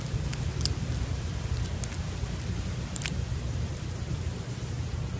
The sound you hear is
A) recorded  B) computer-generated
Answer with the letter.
A